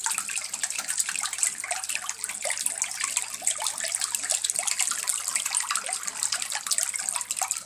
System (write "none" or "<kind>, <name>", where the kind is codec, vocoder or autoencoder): none